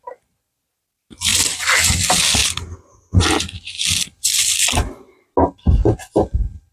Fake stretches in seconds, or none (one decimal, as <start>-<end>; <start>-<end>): none